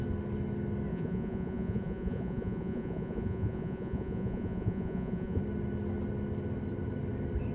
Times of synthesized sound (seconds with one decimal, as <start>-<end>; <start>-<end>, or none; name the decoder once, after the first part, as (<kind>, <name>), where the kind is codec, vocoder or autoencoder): 0.9-5.4 (vocoder, Vocos)